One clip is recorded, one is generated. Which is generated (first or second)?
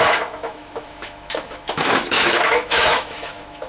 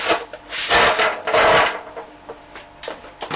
first